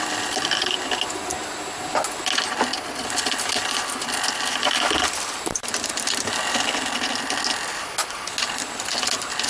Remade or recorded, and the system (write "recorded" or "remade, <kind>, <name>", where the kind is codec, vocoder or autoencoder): recorded